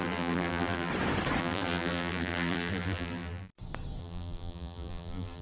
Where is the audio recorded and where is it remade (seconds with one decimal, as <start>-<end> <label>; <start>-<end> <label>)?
0.0-0.9 remade; 0.9-1.4 recorded; 1.4-3.5 remade; 3.5-4.0 recorded; 4.0-5.4 remade